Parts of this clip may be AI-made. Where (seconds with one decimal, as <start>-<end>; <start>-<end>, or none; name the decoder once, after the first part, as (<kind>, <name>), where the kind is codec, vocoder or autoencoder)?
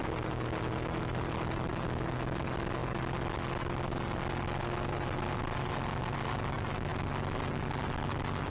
none